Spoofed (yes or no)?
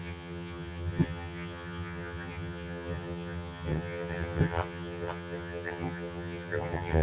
yes